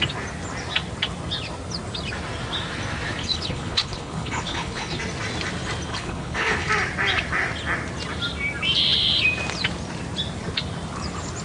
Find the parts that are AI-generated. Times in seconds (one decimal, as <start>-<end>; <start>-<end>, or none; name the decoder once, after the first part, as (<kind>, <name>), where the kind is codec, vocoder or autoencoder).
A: 3.2-5.0 (codec, HILCodec); 5.9-6.7